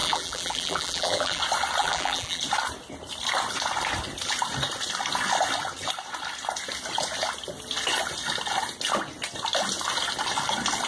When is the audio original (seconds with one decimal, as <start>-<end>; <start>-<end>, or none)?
1.4-1.8; 2.4-10.9